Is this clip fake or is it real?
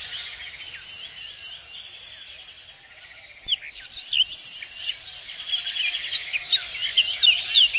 real